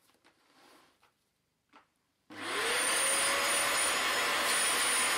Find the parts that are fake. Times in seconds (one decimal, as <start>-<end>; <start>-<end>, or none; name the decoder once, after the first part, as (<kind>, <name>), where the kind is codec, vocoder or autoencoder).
0.0-2.9 (vocoder, BigVGAN v2)